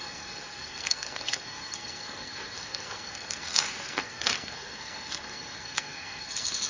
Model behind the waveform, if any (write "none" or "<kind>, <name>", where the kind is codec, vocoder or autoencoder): codec, SNAC